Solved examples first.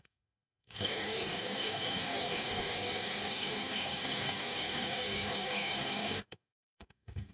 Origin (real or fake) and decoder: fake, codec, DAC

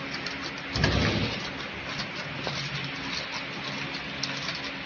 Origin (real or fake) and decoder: real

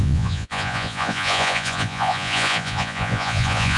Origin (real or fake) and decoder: fake, vocoder, Vocos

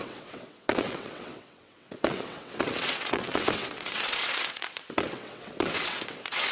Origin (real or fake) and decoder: fake, vocoder, WaveNeXt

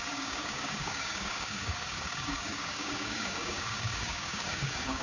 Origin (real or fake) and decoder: fake, codec, DAC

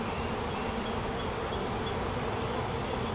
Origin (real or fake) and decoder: real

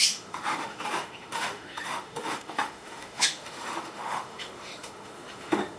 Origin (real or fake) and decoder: fake, autoencoder, DAC-VAE